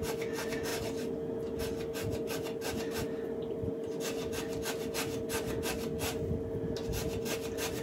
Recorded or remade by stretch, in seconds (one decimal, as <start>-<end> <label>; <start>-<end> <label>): 0.0-7.8 recorded